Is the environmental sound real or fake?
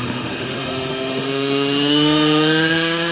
fake